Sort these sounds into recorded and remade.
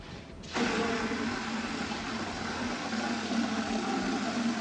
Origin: recorded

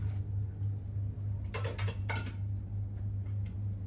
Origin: recorded